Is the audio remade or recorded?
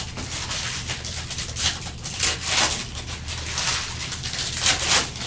recorded